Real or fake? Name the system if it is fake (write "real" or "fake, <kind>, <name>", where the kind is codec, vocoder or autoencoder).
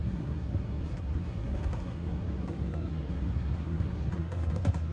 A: fake, codec, SNAC